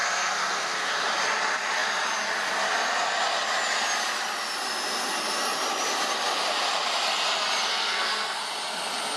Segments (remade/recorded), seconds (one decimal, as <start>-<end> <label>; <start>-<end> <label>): 0.0-0.9 remade; 0.9-7.7 recorded; 7.7-8.4 remade; 8.4-9.2 recorded

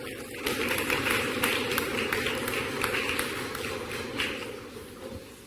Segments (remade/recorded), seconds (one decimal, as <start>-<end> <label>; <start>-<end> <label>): 0.0-1.9 remade; 1.9-4.7 recorded; 4.7-5.5 remade

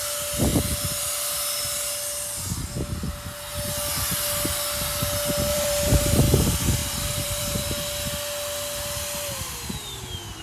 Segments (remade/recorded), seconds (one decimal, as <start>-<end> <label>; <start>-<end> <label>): 0.0-5.5 recorded; 5.5-6.2 remade; 6.2-6.8 recorded; 6.8-7.7 remade; 7.7-10.4 recorded